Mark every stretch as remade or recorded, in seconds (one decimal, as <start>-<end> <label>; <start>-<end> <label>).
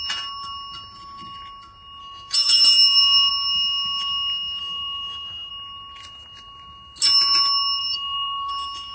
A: 0.0-2.0 recorded; 2.0-3.3 remade; 3.3-4.6 recorded; 4.6-5.5 remade; 5.5-7.8 recorded; 7.8-8.5 remade; 8.5-8.9 recorded